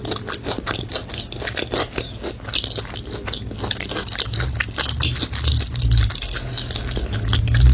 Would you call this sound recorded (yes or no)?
yes